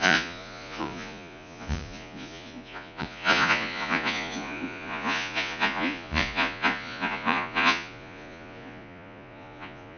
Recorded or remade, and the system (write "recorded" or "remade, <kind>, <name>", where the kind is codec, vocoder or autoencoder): remade, vocoder, Vocos